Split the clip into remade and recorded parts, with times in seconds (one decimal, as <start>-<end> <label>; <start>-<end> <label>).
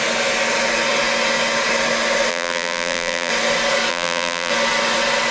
0.0-2.3 recorded; 2.3-3.3 remade; 3.3-3.9 recorded; 3.9-4.5 remade; 4.5-5.3 recorded